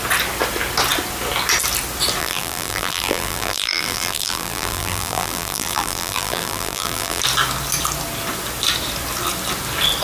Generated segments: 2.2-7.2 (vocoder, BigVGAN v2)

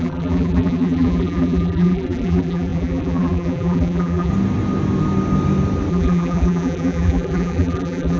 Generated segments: 0.0-4.3 (vocoder, BigVGAN v2); 5.9-8.2

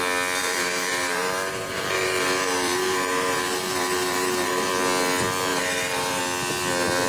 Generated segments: 0.4-4.7 (vocoder, BigVGAN v2); 5.5-6.2

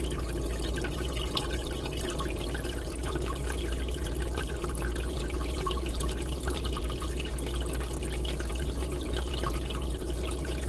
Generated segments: 0.0-7.3 (vocoder, BigVGAN v2); 8.5-10.7